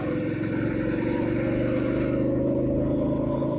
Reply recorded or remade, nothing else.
recorded